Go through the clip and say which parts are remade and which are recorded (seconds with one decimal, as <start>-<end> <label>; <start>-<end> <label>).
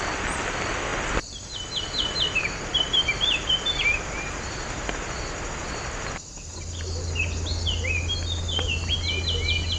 0.0-9.8 recorded